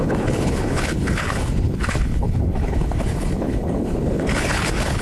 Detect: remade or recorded remade